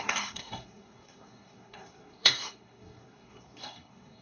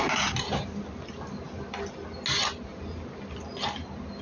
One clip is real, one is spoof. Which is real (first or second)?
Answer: second